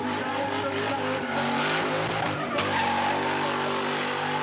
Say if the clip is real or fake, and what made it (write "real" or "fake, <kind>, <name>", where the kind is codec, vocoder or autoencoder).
real